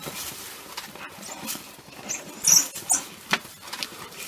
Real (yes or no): yes